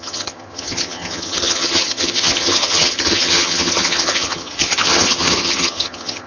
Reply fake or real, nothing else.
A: fake